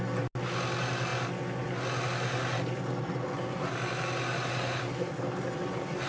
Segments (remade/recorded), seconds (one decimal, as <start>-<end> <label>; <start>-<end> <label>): 0.0-6.1 recorded